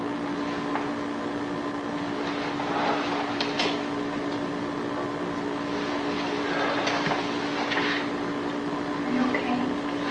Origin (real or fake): real